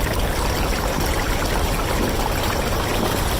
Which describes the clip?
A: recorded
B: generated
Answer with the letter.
A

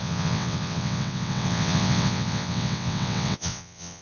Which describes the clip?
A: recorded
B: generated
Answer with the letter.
B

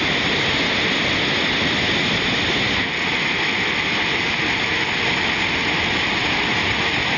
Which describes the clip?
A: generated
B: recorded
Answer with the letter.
B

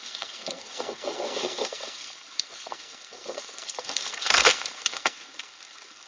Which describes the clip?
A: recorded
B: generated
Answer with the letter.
B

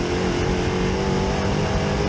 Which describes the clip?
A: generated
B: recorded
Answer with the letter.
B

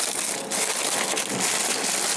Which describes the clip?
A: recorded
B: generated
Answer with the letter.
A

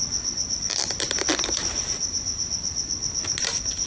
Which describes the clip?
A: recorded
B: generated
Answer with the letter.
A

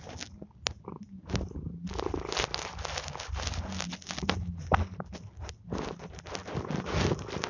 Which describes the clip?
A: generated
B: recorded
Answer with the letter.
B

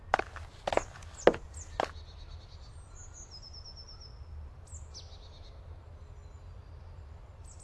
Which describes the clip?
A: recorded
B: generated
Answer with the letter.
A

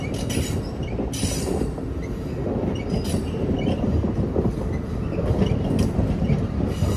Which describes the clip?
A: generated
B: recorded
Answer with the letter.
B